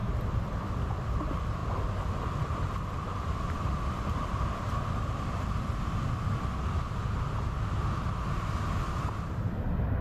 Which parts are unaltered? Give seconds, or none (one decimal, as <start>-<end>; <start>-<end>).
0.7-1.6; 5.7-10.0